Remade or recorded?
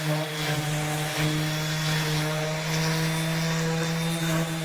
recorded